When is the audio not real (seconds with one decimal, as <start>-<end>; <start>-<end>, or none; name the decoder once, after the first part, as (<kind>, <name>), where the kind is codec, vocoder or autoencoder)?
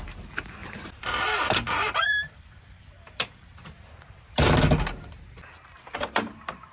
0.6-4.6 (vocoder, BigVGAN v2)